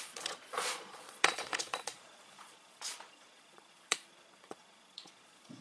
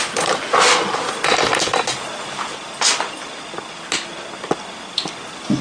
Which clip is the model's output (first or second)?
first